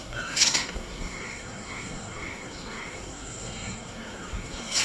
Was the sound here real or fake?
fake